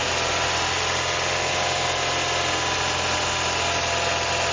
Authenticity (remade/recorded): recorded